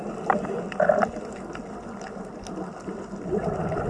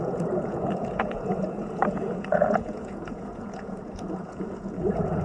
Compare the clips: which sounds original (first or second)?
first